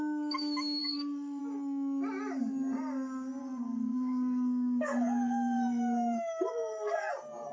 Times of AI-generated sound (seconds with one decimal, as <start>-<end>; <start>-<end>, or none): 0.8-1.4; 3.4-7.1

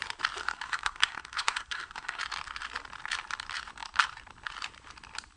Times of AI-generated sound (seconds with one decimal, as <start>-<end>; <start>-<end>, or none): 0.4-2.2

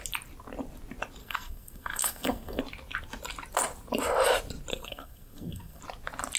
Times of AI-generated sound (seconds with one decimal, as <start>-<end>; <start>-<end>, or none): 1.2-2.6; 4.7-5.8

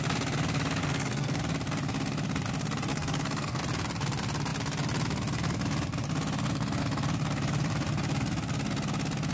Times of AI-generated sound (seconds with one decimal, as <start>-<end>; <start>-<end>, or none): 0.8-1.4; 2.9-3.6

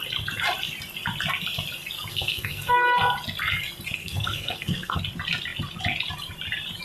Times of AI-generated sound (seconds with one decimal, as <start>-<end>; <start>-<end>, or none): 2.1-2.7; 4.0-5.0

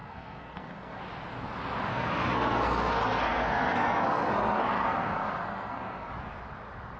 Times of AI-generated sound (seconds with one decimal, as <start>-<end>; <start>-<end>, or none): 0.0-1.0; 1.9-6.1

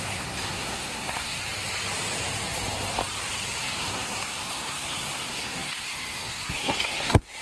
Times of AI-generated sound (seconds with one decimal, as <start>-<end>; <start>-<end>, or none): 0.0-1.4; 3.6-7.4